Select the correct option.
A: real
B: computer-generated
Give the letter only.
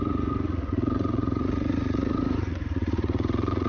B